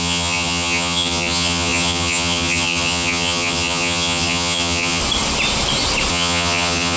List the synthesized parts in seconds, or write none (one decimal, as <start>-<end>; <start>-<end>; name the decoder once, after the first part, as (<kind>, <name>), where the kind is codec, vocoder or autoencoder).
0.0-5.0 (vocoder, HiFi-GAN); 6.1-7.0